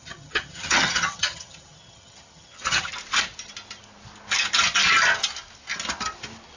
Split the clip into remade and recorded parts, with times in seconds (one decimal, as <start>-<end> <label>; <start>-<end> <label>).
0.0-2.9 remade; 2.9-6.6 recorded